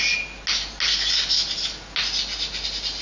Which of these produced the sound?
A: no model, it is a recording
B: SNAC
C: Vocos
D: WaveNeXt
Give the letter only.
A